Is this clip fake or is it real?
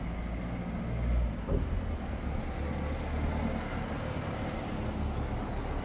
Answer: real